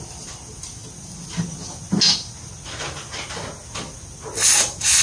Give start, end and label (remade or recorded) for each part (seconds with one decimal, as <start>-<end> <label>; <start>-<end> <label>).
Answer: 0.0-5.0 recorded

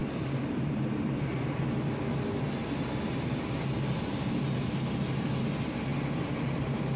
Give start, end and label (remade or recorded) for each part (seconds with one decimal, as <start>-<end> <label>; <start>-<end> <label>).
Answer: 0.0-7.0 recorded

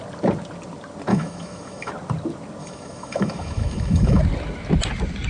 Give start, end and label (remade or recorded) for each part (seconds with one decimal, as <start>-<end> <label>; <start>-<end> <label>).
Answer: 0.0-1.1 recorded; 1.1-1.9 remade; 1.9-2.6 recorded; 2.6-4.2 remade; 4.2-5.3 recorded

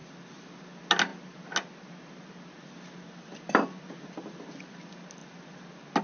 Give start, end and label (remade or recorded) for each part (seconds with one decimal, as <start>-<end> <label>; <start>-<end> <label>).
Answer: 0.0-6.0 recorded

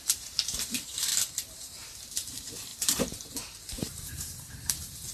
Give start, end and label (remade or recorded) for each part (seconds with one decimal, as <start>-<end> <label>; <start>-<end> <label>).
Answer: 0.0-1.1 remade; 1.1-1.6 recorded; 1.6-5.1 remade

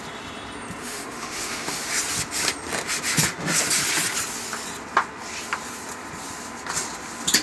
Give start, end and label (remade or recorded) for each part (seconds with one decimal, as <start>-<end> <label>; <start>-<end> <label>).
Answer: 0.0-0.8 recorded; 0.8-1.9 remade; 1.9-7.4 recorded

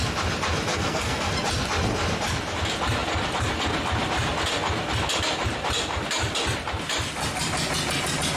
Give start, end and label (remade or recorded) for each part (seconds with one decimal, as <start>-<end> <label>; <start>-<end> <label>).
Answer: 0.0-0.7 recorded; 0.7-1.3 remade; 1.3-8.4 recorded